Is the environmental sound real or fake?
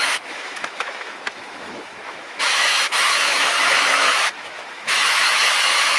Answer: fake